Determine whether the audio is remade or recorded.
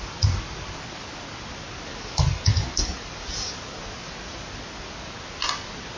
recorded